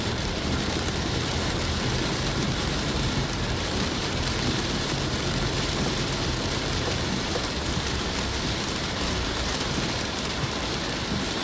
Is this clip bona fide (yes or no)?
no